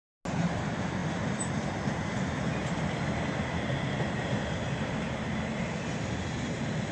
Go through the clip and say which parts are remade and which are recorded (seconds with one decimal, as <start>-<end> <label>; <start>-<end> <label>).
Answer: 0.0-6.9 recorded